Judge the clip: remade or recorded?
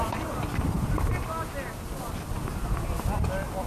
recorded